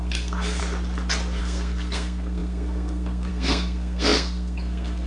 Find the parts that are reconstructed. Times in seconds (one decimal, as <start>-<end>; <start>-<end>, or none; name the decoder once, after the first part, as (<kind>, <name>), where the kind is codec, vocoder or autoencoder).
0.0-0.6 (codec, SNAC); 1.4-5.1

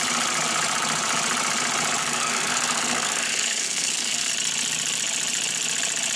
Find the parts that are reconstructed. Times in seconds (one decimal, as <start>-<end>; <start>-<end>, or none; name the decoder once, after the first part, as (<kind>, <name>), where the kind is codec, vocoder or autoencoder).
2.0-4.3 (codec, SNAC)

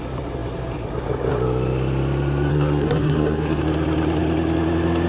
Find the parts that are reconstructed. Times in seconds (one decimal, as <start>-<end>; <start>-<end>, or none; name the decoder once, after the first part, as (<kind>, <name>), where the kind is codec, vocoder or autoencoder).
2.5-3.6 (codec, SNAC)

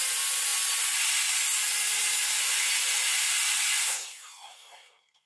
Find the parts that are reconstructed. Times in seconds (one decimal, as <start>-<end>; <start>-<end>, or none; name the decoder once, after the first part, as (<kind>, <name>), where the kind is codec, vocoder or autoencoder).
3.8-5.3 (codec, SNAC)

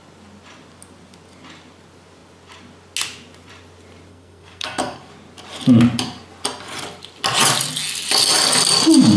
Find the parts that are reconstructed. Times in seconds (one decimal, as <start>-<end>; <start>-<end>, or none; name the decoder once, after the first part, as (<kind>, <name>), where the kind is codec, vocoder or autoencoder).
4.1-5.1 (codec, SNAC)